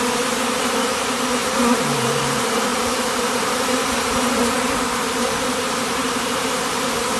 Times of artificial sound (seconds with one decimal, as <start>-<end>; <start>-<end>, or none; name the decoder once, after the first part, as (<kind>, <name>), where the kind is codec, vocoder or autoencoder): 1.4-2.2 (vocoder, BigVGAN v2); 2.7-6.6